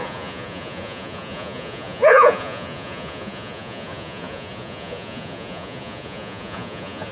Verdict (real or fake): fake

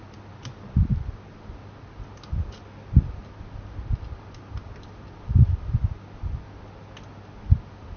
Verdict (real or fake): real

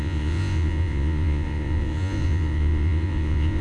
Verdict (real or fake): fake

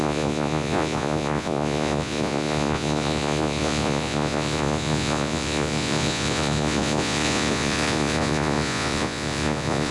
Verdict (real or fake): fake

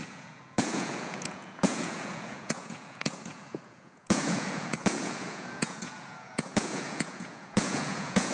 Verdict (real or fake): fake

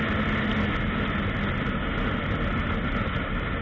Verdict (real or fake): real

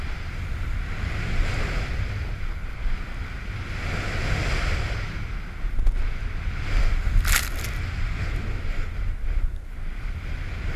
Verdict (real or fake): real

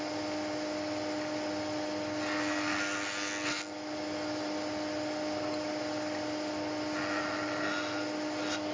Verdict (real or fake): real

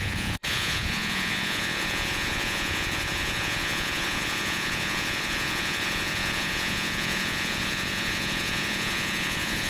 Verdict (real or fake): fake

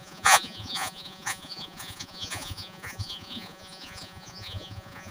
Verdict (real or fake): fake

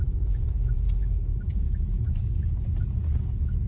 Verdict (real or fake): fake